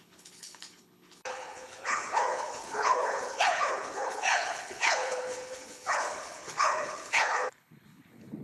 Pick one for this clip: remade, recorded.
remade